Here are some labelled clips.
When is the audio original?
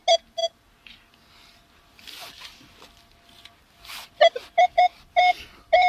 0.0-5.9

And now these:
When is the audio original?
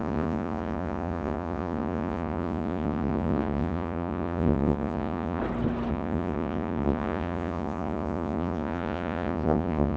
5.4-5.9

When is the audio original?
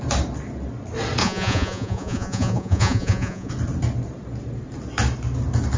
0.0-1.2; 3.5-5.8